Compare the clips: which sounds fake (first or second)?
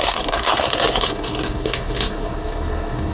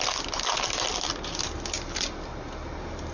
first